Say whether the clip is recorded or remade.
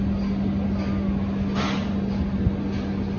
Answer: recorded